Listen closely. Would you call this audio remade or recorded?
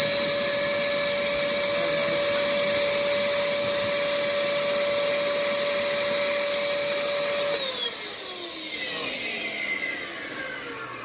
recorded